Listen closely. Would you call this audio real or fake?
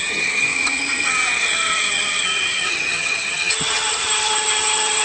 fake